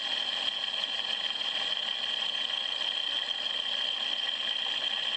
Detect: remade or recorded recorded